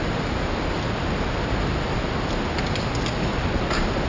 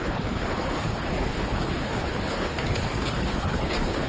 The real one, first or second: first